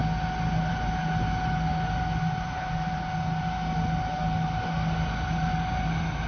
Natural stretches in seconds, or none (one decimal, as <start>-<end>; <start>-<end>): 0.0-6.3